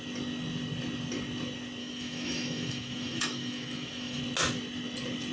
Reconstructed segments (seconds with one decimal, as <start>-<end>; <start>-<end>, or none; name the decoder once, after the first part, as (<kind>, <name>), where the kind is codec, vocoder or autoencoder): 1.8-4.2 (autoencoder, DAC-VAE)